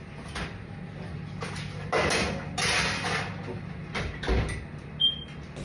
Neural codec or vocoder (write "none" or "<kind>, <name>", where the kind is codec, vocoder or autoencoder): none